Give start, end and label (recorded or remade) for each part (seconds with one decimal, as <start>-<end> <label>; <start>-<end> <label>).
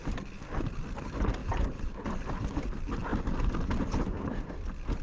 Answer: 0.0-1.4 recorded; 1.4-2.0 remade; 2.0-5.0 recorded